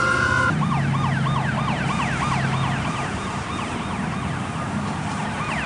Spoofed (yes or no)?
no